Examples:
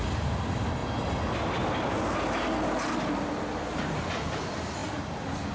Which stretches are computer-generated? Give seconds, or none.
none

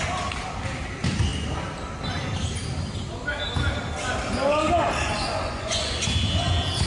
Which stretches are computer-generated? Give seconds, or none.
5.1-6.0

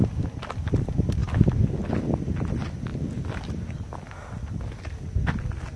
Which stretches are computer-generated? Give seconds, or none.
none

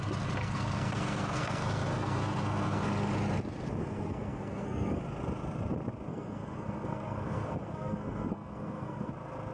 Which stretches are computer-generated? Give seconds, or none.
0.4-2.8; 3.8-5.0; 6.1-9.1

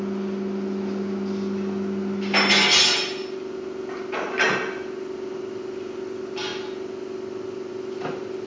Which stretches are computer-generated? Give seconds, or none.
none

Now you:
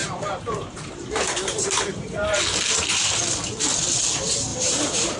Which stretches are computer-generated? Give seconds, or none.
0.0-2.4; 4.5-5.2

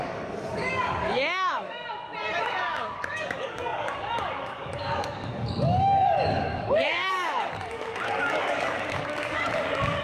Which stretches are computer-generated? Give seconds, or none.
0.0-1.8; 2.4-10.0